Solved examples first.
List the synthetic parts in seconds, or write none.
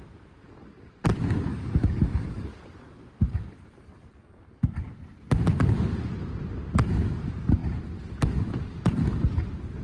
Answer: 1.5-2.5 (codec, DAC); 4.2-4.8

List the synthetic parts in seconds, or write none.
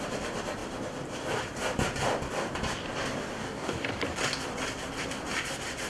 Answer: 3.4-3.9 (codec, DAC)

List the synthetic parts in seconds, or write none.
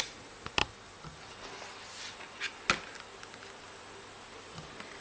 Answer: none